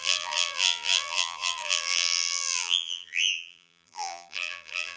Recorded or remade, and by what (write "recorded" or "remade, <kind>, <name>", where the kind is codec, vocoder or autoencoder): remade, vocoder, BigVGAN v2